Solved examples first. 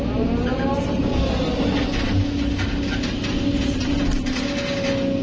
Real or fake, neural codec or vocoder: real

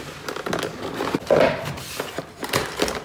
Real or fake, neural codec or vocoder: real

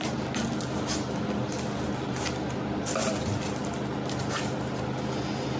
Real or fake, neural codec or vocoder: real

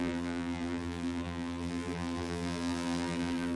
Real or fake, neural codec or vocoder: fake, vocoder, BigVGAN v2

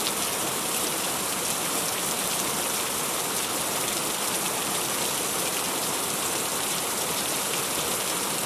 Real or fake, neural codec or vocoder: fake, vocoder, BigVGAN v2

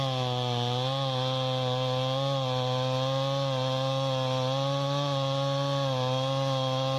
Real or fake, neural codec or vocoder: real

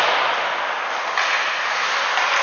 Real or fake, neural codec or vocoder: real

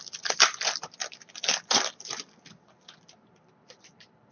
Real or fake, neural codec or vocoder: fake, vocoder, BigVGAN v2